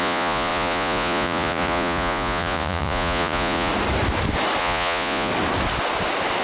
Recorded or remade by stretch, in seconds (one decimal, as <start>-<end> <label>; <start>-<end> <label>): 0.0-3.7 remade; 3.7-4.6 recorded; 4.6-5.3 remade; 5.3-6.4 recorded